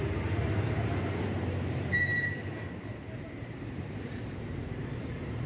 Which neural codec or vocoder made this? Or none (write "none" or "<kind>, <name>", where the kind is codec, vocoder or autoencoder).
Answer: vocoder, BigVGAN v2